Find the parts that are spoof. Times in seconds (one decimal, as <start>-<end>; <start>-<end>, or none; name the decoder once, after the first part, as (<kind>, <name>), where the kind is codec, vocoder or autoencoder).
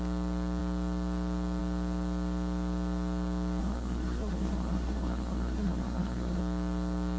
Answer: 3.6-6.4 (codec, SNAC)